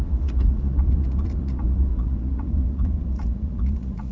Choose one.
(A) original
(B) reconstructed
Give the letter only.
B